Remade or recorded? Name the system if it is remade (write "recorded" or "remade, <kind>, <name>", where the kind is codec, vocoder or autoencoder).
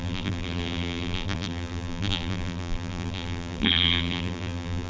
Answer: remade, vocoder, BigVGAN v2